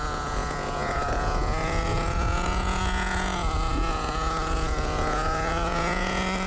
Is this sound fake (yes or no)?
yes